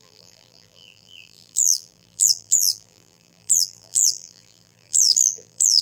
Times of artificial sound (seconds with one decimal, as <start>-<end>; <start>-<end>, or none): 0.0-5.8